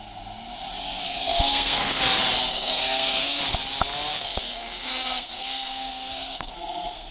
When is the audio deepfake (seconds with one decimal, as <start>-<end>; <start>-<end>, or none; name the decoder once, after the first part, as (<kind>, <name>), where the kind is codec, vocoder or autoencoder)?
1.0-2.0 (codec, SNAC); 2.5-3.4; 4.1-7.1